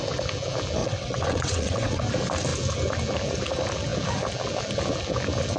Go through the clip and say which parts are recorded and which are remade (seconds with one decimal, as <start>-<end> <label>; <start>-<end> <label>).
0.0-0.8 recorded; 0.8-2.0 remade; 2.0-5.6 recorded